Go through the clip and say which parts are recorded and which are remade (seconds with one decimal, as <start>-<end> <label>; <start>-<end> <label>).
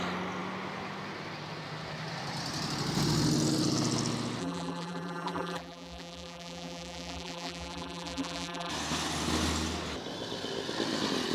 0.0-4.4 recorded; 4.4-8.7 remade; 8.7-11.3 recorded